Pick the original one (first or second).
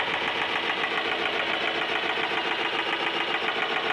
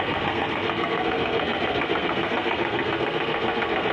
first